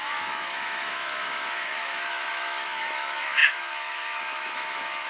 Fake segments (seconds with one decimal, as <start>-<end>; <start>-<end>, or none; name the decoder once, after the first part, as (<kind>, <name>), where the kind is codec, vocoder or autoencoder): 0.0-5.1 (autoencoder, DAC-VAE)